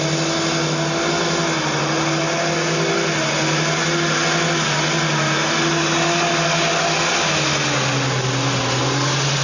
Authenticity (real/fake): real